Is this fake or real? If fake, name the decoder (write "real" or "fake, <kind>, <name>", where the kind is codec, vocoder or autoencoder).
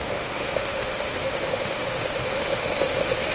fake, autoencoder, DAC-VAE